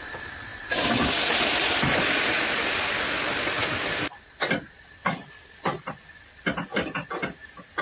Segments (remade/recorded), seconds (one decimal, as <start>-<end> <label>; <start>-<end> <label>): 0.0-7.8 recorded